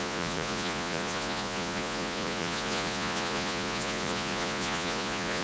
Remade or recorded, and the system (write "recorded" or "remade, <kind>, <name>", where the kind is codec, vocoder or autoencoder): remade, vocoder, Vocos